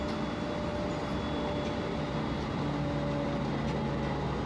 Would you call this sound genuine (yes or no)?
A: yes